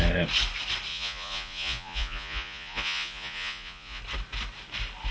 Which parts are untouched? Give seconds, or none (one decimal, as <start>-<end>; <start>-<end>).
0.0-0.9; 4.0-5.1